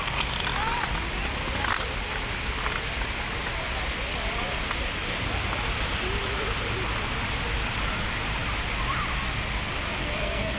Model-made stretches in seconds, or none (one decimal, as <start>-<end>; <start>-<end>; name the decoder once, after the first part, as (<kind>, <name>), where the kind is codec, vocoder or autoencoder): 10.0-10.6 (codec, SNAC)

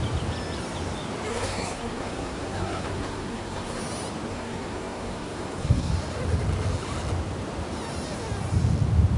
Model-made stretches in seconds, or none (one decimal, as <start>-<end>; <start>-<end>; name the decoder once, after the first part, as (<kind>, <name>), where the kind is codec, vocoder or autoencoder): 1.3-3.8 (codec, SNAC); 4.3-5.9

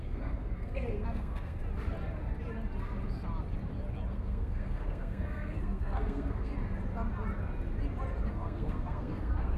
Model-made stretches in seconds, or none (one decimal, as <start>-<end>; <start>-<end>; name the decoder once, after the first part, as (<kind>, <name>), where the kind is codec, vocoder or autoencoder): 0.0-1.6 (codec, SNAC); 4.1-6.5; 8.3-9.6

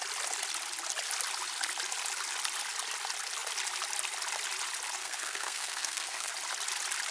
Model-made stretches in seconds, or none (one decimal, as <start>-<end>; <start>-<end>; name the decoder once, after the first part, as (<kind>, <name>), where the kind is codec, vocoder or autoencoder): 5.0-6.3 (codec, SNAC)

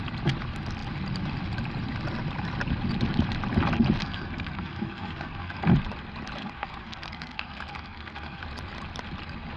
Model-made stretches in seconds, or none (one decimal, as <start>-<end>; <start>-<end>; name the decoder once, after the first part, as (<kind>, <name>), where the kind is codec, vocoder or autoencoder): 4.0-5.6 (codec, SNAC); 6.4-8.4

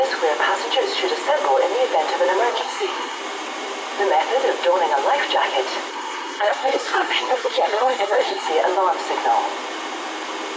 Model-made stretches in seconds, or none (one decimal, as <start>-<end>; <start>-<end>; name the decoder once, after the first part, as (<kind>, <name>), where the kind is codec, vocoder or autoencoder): 2.5-3.2 (codec, SNAC); 5.9-8.5